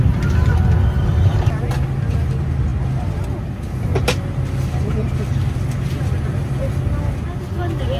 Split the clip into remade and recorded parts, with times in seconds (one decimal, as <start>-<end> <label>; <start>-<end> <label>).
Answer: 0.0-8.0 recorded